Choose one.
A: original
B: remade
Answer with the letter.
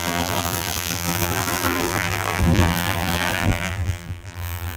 B